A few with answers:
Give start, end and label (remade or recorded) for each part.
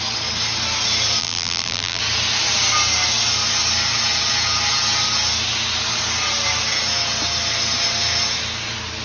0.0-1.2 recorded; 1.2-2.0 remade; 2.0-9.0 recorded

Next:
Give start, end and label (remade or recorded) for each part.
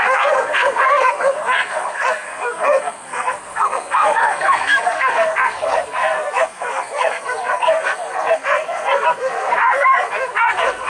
0.0-10.9 remade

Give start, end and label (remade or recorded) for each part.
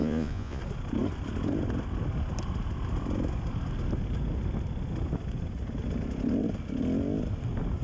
0.0-0.6 remade; 0.6-7.8 recorded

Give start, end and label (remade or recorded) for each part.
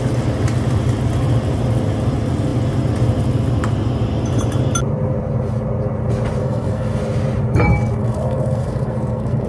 0.0-6.4 recorded; 6.4-7.0 remade; 7.0-8.0 recorded; 8.0-9.5 remade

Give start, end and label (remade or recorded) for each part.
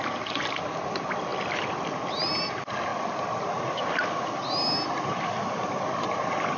0.0-6.6 recorded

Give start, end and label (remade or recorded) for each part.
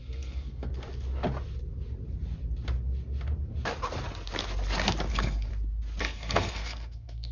0.0-0.7 remade; 0.7-5.1 recorded; 5.1-5.5 remade; 5.5-6.0 recorded; 6.0-7.3 remade